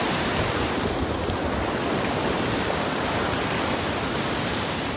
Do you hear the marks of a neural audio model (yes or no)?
no